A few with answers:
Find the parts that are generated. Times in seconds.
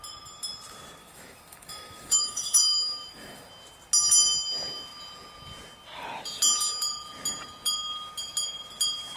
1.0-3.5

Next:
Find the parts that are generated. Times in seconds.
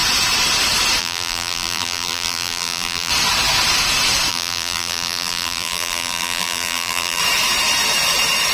1.0-3.1; 4.3-7.2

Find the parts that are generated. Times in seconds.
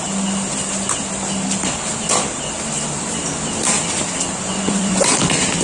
4.4-5.0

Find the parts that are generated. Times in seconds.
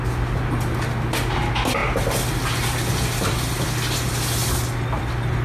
none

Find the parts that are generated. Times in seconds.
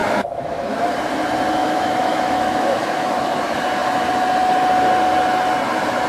0.0-0.8; 1.6-3.4